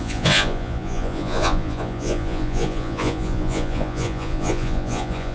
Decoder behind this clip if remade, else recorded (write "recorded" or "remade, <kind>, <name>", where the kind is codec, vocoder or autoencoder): remade, vocoder, Vocos